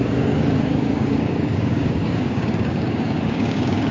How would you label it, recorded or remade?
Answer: remade